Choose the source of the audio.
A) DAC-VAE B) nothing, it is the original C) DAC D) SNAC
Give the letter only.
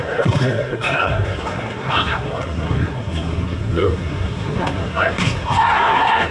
D